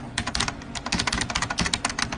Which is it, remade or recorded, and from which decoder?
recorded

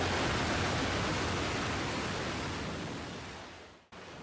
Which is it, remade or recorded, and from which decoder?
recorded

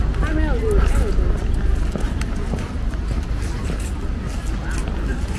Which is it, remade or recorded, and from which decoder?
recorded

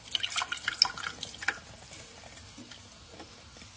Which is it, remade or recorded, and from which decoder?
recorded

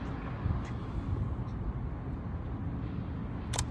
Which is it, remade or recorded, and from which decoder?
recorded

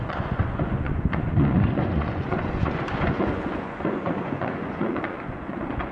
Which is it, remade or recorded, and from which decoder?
remade, vocoder, Vocos